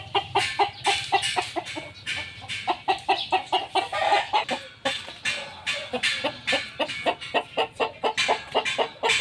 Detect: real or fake real